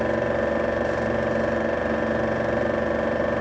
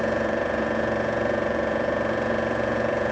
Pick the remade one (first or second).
second